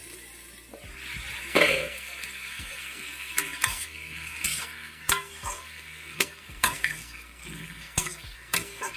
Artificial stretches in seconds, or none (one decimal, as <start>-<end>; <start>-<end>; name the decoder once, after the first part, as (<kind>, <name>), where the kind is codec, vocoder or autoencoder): 1.4-9.0 (codec, SNAC)